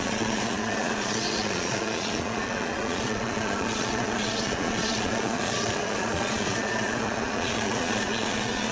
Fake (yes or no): yes